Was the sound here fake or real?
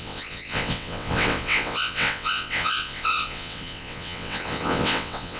fake